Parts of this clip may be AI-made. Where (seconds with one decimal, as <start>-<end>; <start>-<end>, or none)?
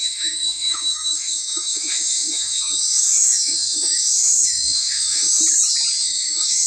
0.0-5.4; 6.0-6.7